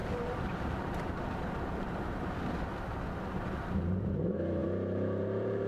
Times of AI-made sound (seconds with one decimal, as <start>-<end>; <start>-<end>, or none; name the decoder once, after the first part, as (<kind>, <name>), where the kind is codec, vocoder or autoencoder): 0.0-2.7 (vocoder, BigVGAN v2); 3.4-5.7